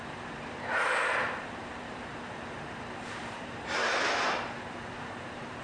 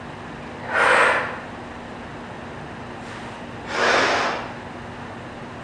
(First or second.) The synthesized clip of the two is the first